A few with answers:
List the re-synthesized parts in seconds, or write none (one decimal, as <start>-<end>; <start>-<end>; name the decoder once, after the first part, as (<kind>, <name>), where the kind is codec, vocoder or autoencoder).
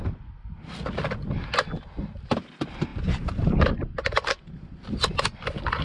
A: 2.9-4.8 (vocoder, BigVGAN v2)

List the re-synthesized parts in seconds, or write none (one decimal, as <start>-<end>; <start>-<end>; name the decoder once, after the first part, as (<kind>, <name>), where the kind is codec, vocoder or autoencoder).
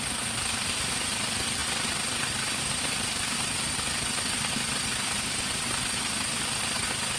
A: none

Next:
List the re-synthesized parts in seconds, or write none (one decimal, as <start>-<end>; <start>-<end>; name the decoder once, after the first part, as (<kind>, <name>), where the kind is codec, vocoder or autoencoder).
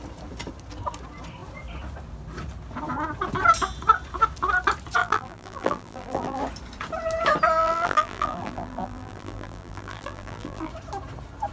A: 5.0-6.4 (vocoder, BigVGAN v2); 7.6-10.7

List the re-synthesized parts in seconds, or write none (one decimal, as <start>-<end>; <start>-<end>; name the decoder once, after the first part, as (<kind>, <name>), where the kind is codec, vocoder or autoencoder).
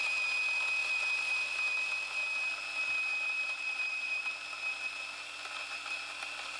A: 0.8-1.7 (vocoder, BigVGAN v2); 3.1-4.2